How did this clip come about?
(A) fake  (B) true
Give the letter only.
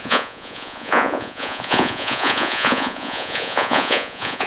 A